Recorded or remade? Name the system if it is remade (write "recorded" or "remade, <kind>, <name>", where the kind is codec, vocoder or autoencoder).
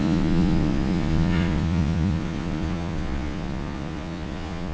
remade, vocoder, Vocos